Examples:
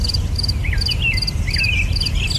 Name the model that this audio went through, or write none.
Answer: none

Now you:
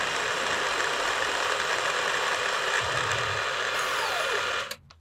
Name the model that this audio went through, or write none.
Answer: none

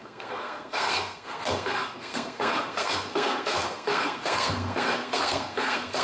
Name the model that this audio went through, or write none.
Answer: codec, SNAC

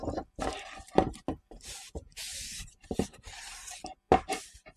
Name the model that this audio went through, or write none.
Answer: none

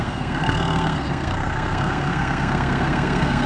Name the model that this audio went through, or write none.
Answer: codec, SNAC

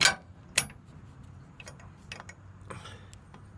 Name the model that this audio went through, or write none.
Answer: none